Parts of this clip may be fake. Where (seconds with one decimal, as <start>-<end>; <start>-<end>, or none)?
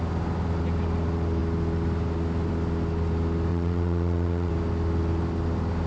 3.5-4.5